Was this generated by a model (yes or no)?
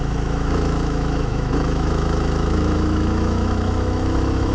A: yes